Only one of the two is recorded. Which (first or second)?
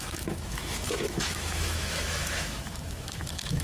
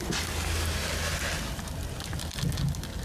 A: second